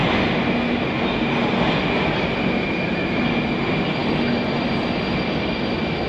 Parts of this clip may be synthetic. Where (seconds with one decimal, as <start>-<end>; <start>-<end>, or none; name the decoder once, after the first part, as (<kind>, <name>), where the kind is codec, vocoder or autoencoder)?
none